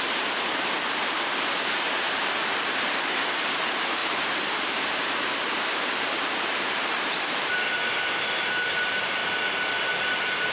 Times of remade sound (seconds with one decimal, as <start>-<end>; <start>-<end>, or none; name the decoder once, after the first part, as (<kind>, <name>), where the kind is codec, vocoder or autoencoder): 0.0-9.2 (vocoder, BigVGAN v2); 10.1-10.5